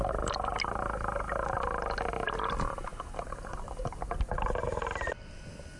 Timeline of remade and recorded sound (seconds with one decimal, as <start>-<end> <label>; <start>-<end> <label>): 0.0-5.8 recorded